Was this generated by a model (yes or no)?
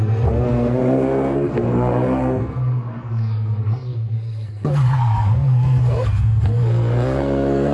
yes